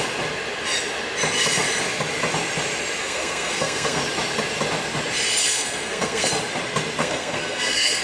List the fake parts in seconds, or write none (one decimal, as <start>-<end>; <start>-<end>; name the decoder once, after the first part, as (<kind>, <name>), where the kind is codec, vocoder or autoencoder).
3.0-4.0 (codec, SNAC); 5.4-6.3; 7.0-8.0